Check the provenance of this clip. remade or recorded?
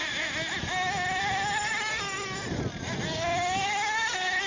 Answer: recorded